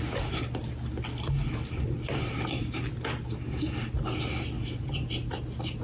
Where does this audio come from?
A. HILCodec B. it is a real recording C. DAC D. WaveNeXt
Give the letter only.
B